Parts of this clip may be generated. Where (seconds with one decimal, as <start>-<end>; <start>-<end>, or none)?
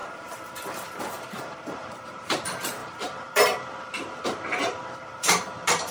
0.0-5.9